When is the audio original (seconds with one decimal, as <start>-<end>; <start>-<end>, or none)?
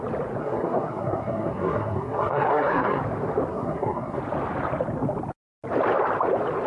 0.0-0.4; 3.0-3.5; 4.2-6.7